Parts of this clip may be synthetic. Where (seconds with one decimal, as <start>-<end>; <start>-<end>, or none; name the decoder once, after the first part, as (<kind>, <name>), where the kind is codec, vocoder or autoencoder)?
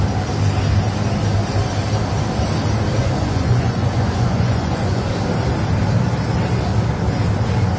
3.0-5.1 (vocoder, Vocos)